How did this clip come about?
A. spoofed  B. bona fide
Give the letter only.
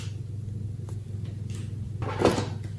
B